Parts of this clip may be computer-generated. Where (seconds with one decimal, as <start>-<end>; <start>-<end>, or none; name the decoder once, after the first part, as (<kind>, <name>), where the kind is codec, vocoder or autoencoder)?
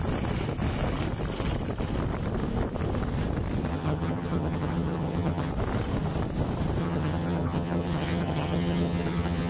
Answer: 3.7-5.5 (vocoder, HiFi-GAN); 6.8-9.5